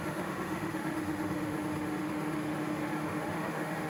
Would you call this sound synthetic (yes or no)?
yes